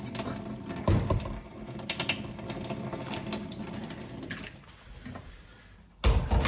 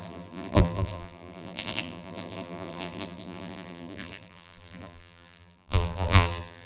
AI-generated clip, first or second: second